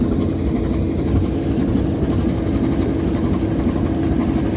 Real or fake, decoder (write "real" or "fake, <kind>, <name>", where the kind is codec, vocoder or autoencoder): real